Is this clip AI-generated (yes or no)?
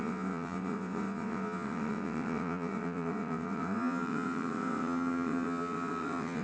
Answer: yes